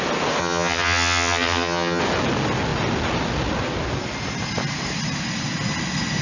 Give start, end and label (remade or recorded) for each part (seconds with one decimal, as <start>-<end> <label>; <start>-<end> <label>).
0.0-0.4 recorded; 0.4-2.0 remade; 2.0-6.2 recorded